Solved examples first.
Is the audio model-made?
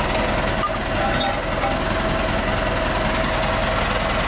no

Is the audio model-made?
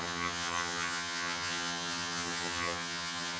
yes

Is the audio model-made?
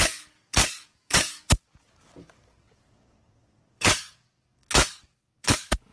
yes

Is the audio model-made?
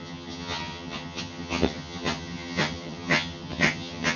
yes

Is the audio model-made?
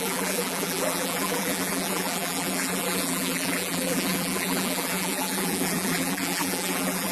yes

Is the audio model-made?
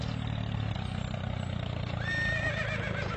no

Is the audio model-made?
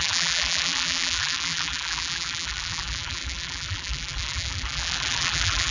yes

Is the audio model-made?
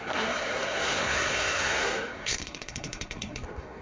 yes